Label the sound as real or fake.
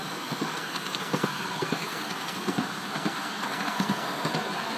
fake